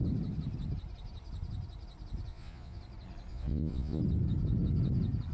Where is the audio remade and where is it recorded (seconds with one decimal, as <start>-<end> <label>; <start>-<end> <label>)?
0.0-2.3 recorded; 2.3-2.8 remade; 2.8-3.3 recorded; 3.3-4.0 remade; 4.0-5.3 recorded

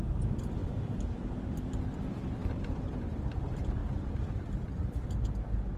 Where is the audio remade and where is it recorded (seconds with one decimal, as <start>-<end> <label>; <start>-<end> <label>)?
0.0-2.4 recorded; 2.4-3.4 remade; 3.4-3.8 recorded; 3.8-5.3 remade; 5.3-5.8 recorded